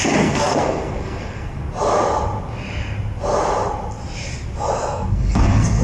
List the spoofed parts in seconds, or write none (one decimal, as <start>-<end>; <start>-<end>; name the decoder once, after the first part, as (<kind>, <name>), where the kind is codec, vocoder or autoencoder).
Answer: 0.0-1.6 (codec, SNAC); 5.1-5.8